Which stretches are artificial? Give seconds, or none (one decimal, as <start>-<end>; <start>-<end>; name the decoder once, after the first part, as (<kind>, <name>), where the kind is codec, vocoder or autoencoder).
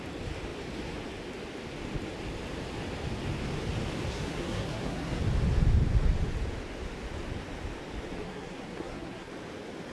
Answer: 4.1-5.2 (codec, SNAC); 8.2-9.3